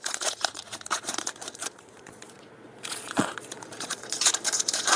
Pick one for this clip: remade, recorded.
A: remade